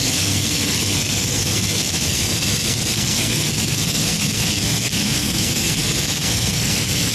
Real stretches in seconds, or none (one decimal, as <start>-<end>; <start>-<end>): none